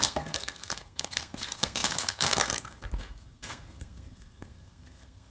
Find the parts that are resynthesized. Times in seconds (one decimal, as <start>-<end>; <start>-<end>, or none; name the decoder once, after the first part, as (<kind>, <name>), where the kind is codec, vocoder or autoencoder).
0.0-5.3 (codec, SNAC)